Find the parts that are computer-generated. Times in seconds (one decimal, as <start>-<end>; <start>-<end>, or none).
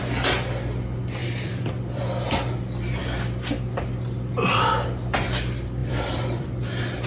1.2-2.0; 5.8-6.5